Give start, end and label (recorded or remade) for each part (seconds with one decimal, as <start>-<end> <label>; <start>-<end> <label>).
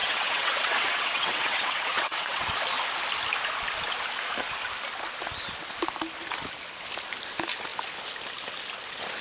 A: 0.0-2.5 remade; 2.5-9.2 recorded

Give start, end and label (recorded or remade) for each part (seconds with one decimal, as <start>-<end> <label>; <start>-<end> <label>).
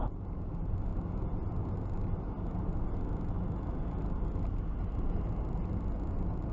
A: 0.0-6.5 recorded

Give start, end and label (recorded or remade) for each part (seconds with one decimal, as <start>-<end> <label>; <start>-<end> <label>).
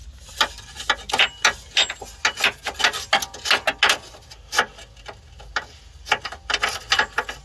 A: 0.0-7.4 recorded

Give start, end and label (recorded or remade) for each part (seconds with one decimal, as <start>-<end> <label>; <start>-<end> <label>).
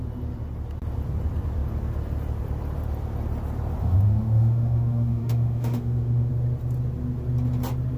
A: 0.0-3.8 recorded; 3.8-6.3 remade; 6.3-8.0 recorded